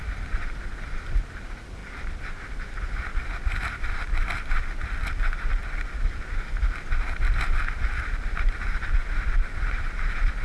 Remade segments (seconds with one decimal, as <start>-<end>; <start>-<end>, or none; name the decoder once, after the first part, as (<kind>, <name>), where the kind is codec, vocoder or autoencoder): 1.8-6.0 (vocoder, BigVGAN v2)